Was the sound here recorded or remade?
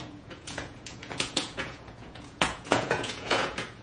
remade